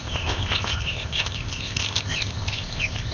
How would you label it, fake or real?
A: fake